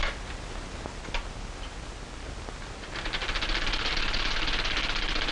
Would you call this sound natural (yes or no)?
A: yes